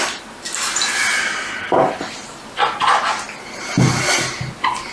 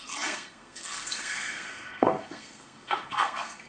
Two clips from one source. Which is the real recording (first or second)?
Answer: first